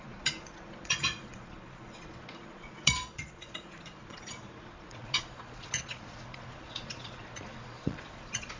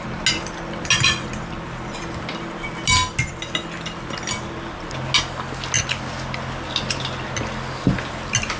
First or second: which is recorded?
second